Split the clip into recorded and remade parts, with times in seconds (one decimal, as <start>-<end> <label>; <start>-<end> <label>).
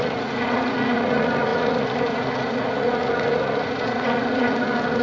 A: 0.0-5.0 remade